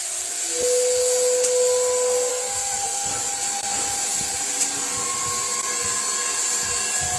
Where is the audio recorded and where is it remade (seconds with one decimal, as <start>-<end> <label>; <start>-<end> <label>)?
0.0-2.3 recorded; 2.3-3.1 remade; 3.1-7.2 recorded